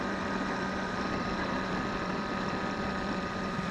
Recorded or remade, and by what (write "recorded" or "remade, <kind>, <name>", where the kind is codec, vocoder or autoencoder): remade, vocoder, BigVGAN v2